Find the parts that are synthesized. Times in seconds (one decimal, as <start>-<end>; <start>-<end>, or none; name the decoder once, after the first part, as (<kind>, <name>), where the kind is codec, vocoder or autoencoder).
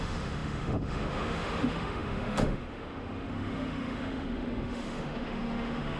0.0-6.0 (autoencoder, DAC-VAE)